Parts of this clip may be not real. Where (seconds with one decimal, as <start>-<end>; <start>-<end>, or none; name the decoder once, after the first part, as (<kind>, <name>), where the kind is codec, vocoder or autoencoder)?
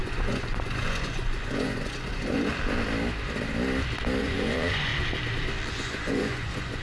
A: 0.0-2.5 (vocoder, Vocos); 4.2-4.9; 5.7-6.8